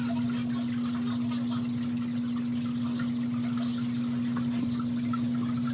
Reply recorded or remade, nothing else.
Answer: recorded